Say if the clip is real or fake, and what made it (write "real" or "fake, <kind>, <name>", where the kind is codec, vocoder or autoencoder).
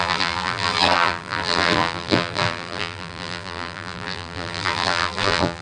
fake, vocoder, BigVGAN v2